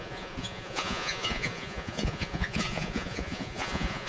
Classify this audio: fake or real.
fake